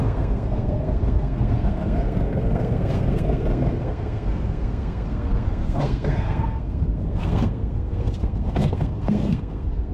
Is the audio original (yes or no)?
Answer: no